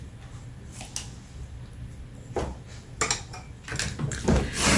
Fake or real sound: real